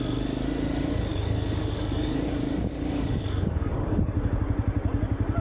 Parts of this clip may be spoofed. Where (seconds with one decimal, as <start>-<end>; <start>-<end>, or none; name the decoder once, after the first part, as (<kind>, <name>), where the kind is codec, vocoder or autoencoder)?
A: 1.1-4.3 (codec, DAC)